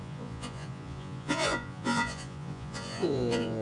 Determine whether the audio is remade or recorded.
remade